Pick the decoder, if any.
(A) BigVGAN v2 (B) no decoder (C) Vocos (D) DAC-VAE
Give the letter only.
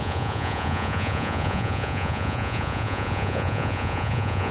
C